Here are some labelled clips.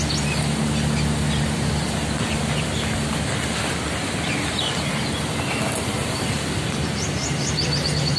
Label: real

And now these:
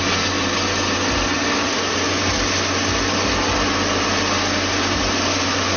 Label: real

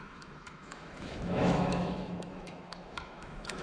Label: fake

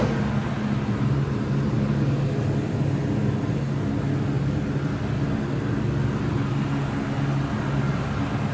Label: real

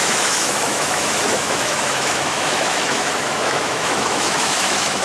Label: fake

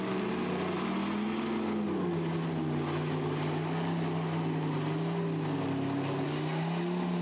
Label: real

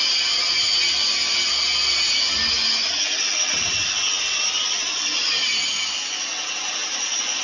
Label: real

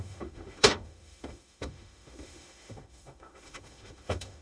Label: fake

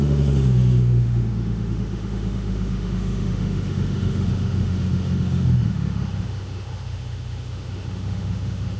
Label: fake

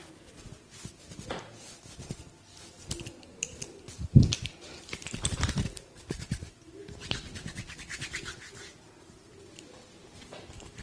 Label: real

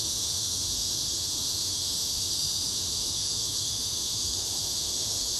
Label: fake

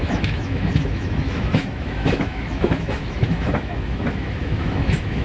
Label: fake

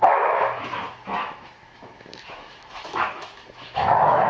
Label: fake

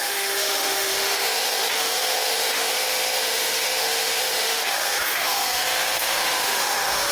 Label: fake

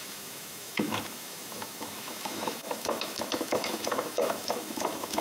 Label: fake